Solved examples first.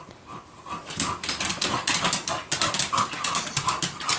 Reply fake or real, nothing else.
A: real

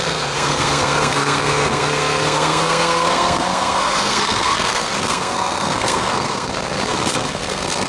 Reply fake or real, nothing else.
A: fake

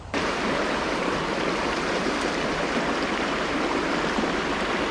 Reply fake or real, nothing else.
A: real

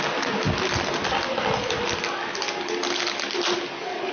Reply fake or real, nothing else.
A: real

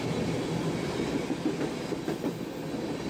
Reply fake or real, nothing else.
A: real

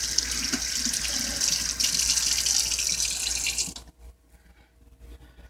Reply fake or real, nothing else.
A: real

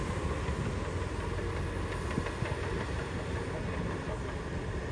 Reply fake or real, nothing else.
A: real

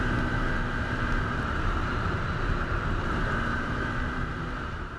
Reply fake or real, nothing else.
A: fake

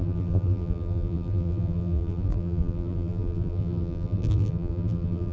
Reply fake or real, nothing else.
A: fake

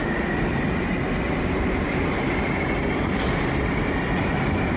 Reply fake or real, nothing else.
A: real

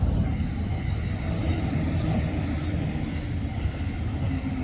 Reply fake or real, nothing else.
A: real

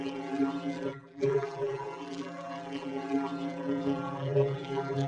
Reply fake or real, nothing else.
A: fake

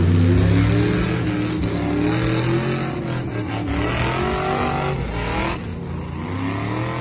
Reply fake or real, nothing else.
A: real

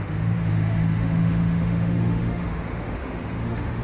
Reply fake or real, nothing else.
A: fake